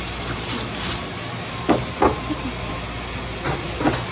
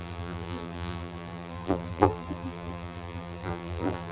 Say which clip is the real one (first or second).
first